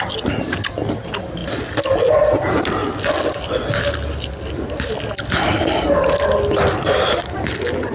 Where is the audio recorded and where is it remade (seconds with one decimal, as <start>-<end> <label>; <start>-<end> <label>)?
0.0-7.9 recorded